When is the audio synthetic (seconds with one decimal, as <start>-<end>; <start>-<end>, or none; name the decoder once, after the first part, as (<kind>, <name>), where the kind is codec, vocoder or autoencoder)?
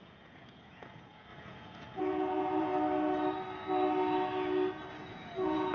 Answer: 0.0-2.7 (vocoder, Vocos); 5.1-5.7